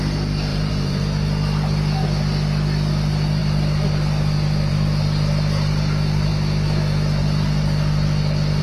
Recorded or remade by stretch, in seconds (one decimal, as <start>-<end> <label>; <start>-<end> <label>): 0.0-0.5 recorded; 0.5-1.0 remade; 1.0-8.6 recorded